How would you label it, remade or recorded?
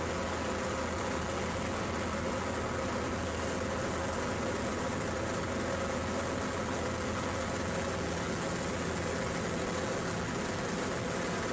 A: recorded